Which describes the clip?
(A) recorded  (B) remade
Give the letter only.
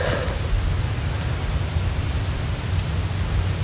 A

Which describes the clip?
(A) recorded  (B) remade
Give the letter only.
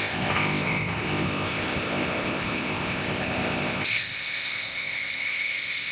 B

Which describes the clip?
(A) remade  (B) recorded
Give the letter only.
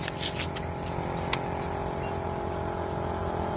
B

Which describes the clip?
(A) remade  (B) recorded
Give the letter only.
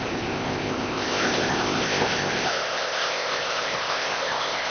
A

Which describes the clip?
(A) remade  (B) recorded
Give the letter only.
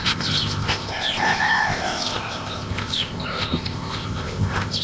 A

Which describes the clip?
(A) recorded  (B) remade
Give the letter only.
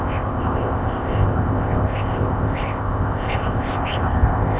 B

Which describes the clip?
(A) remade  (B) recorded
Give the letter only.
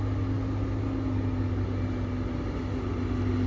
B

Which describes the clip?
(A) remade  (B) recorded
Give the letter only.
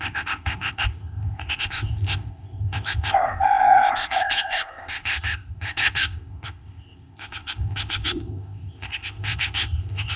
A